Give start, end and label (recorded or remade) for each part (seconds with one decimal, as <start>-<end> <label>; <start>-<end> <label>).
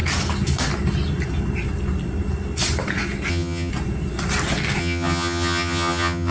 0.0-3.3 recorded; 3.3-3.7 remade; 3.7-4.8 recorded; 4.8-6.3 remade